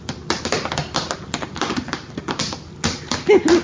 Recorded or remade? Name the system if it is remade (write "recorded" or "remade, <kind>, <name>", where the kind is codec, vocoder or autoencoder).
recorded